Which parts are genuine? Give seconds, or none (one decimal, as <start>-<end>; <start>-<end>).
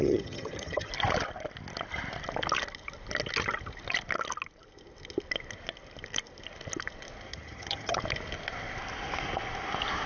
0.9-7.3; 8.0-10.1